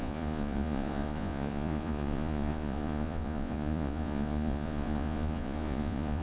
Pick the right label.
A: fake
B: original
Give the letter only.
A